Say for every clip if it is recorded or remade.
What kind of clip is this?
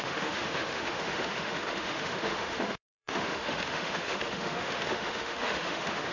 remade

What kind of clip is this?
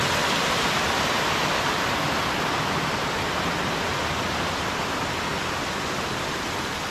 recorded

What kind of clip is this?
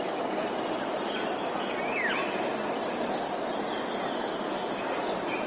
recorded